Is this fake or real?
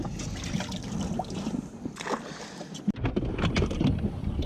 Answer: real